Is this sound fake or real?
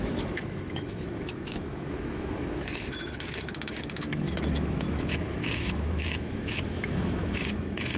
fake